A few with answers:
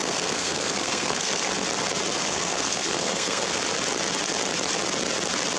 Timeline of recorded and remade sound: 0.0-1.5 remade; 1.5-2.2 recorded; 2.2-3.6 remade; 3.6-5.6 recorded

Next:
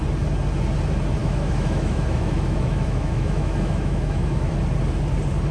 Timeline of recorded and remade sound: 0.0-1.2 recorded; 1.2-4.5 remade; 4.5-5.5 recorded